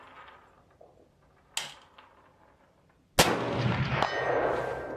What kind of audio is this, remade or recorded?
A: recorded